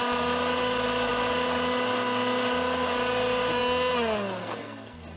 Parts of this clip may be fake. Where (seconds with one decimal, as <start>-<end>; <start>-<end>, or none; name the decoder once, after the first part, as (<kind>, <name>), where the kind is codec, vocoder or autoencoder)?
4.4-5.2 (codec, SNAC)